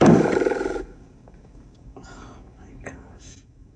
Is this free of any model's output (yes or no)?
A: no